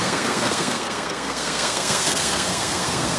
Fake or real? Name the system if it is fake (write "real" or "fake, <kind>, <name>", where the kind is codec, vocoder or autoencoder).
fake, codec, SNAC